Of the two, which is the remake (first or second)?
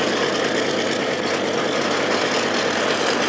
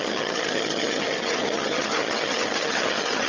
second